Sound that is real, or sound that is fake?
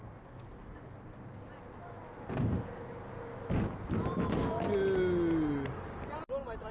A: real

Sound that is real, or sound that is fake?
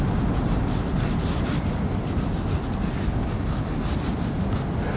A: real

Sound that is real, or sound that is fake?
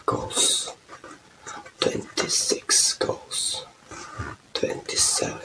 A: real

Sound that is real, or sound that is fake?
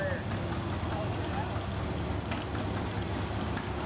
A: real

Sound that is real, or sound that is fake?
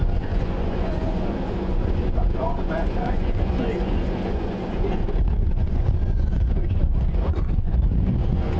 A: fake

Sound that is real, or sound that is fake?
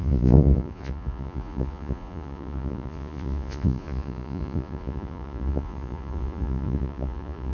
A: fake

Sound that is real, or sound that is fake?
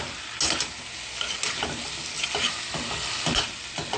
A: real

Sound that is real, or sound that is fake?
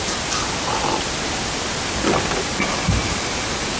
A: real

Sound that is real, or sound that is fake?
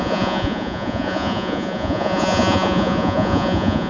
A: fake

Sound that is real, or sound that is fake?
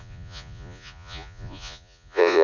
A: fake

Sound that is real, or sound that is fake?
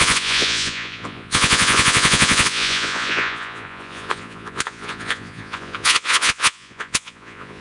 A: fake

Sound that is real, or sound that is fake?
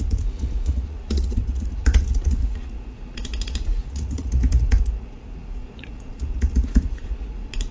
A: fake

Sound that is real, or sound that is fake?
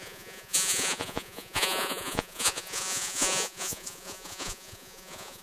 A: fake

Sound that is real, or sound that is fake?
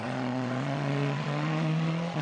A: fake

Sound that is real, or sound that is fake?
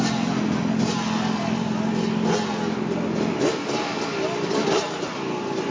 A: real